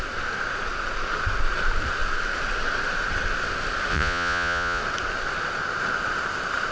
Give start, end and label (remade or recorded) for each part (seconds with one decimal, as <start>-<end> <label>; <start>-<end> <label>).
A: 0.0-3.9 recorded; 3.9-4.8 remade; 4.8-6.7 recorded